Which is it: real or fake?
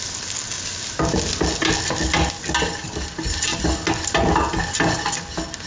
real